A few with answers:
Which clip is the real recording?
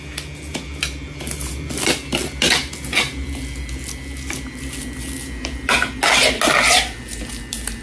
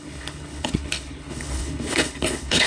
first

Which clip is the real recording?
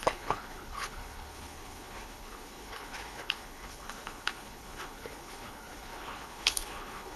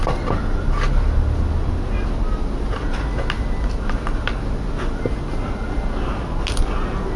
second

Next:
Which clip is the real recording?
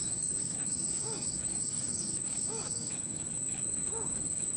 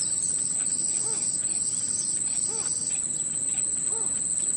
second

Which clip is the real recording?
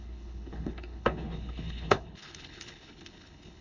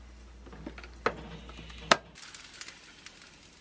second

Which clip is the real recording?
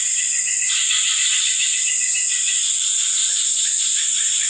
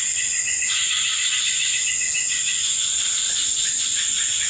second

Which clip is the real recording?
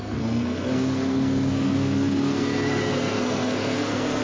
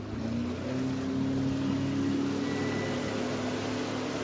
second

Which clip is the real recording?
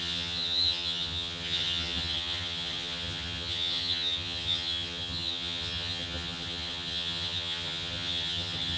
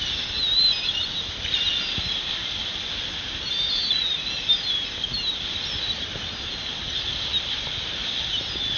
second